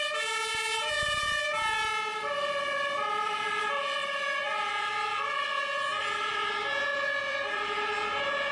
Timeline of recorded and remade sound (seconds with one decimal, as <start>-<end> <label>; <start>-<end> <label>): 0.0-2.1 recorded; 2.1-5.6 remade; 5.6-6.0 recorded; 6.0-6.5 remade; 6.5-6.9 recorded; 6.9-7.8 remade; 7.8-8.5 recorded